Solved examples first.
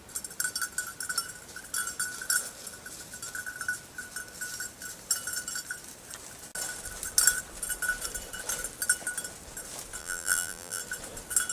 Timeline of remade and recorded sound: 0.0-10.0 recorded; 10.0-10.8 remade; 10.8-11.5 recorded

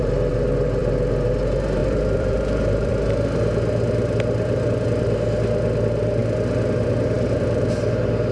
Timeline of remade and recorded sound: 0.0-1.8 recorded; 1.8-2.9 remade; 2.9-8.3 recorded

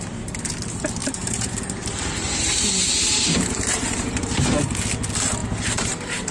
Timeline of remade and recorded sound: 0.0-1.0 recorded; 1.0-4.8 remade; 4.8-5.4 recorded; 5.4-6.3 remade

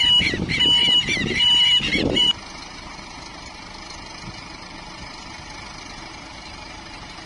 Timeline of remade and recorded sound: 0.0-7.3 remade

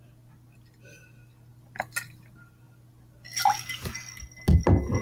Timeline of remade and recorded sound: 0.0-5.0 recorded

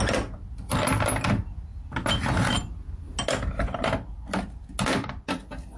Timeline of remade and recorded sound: 0.0-5.8 recorded

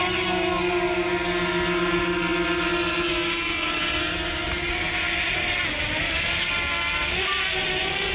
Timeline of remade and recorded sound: 0.0-8.1 recorded

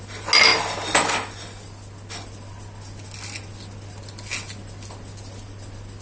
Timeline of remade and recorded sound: 0.0-6.0 recorded